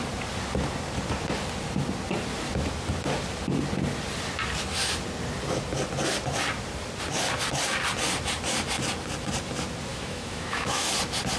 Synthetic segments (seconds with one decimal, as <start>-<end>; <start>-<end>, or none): 9.9-10.9